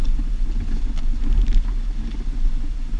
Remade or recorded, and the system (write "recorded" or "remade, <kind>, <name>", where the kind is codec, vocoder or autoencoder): recorded